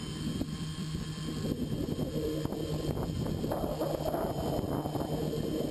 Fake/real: real